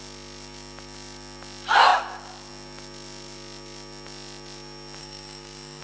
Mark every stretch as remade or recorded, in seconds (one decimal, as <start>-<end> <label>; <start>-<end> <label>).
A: 0.0-5.0 recorded; 5.0-5.8 remade